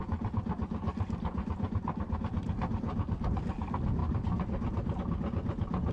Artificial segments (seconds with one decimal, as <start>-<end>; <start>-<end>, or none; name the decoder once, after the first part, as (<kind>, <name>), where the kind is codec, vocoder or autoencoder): 0.9-2.2 (vocoder, BigVGAN v2)